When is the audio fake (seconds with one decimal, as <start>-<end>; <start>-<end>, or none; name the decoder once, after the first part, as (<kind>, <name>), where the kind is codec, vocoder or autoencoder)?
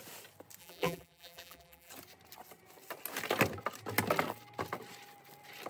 0.6-1.9 (vocoder, BigVGAN v2)